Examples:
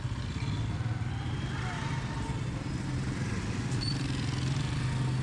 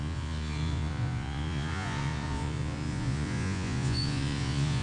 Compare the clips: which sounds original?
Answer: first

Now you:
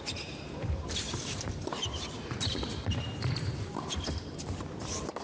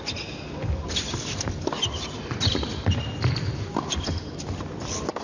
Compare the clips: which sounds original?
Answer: second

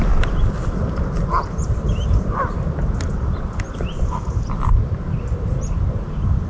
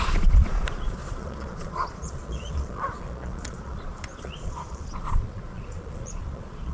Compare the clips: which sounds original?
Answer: first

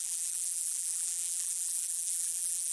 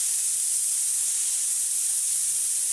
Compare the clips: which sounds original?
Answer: second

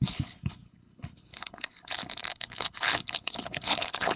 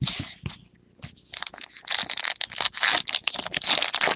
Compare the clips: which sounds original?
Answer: second